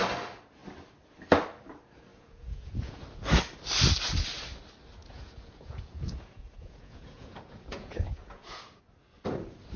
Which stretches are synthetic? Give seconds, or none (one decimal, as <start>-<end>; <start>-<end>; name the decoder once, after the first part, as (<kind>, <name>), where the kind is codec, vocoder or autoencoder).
2.1-3.0 (vocoder, Vocos); 5.0-8.8